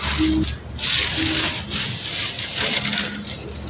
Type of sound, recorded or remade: recorded